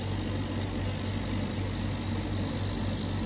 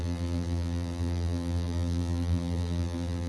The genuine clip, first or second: first